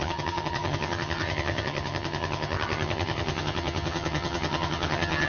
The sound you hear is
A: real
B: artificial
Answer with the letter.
B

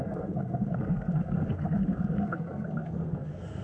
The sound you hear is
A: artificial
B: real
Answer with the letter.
A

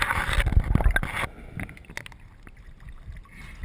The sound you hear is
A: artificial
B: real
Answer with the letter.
B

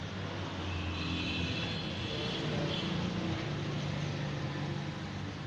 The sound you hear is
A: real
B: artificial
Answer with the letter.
A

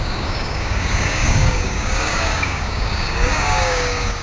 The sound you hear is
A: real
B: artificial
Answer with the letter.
B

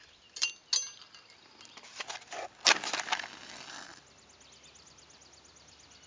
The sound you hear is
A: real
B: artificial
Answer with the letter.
A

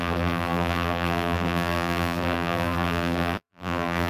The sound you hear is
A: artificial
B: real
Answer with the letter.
A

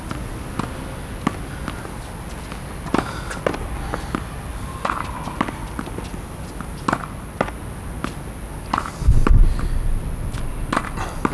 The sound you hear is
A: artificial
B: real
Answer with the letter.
B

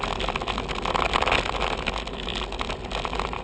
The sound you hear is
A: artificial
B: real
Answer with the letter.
B